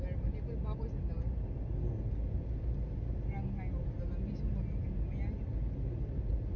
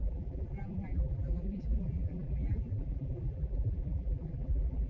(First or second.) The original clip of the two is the first